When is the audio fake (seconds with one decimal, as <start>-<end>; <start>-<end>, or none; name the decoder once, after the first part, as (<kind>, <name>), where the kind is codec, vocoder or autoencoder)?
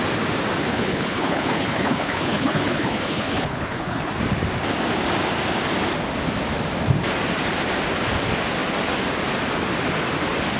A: 0.6-4.1 (codec, HILCodec)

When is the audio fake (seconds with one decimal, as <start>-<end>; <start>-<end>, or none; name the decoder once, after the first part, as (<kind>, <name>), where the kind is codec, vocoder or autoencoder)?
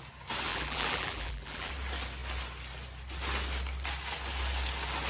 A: 0.5-1.7 (vocoder, BigVGAN v2)